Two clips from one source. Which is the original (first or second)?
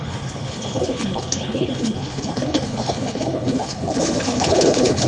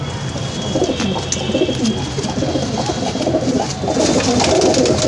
second